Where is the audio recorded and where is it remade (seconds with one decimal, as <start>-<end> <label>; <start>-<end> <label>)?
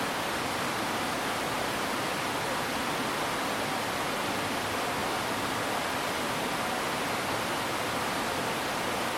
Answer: 0.0-5.0 recorded; 5.0-7.9 remade; 7.9-9.2 recorded